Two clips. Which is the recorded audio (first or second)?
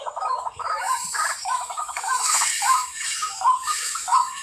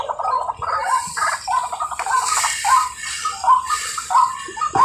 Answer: second